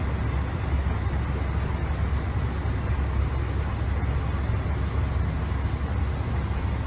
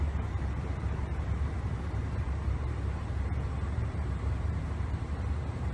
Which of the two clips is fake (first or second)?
second